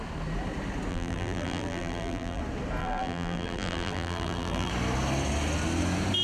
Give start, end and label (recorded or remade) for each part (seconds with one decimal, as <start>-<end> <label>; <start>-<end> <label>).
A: 0.0-0.9 recorded; 0.9-2.4 remade; 2.4-2.8 recorded; 2.8-4.7 remade; 4.7-6.2 recorded